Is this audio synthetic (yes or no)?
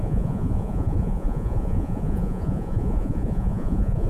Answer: yes